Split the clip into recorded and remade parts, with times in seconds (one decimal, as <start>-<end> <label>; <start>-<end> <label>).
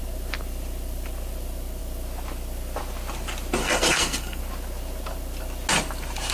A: 0.0-3.6 recorded; 3.6-4.4 remade; 4.4-6.3 recorded